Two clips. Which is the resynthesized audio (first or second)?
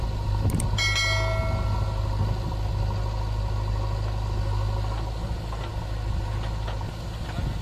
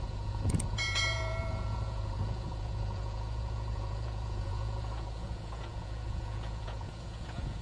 second